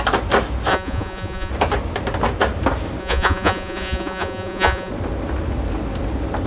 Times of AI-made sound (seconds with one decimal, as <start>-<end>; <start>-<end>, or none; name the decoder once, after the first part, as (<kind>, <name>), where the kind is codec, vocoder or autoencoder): 0.7-1.5 (vocoder, Vocos); 3.0-4.9